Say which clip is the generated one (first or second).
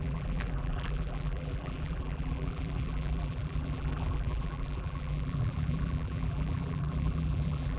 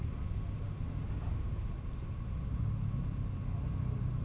first